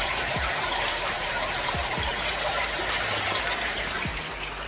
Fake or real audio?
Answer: fake